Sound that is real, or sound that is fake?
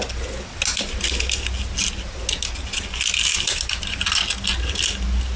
real